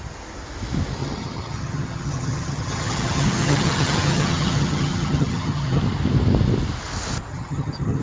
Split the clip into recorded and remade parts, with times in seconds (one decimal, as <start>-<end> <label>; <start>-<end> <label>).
0.0-1.0 recorded; 1.0-5.8 remade; 5.8-7.3 recorded; 7.3-8.0 remade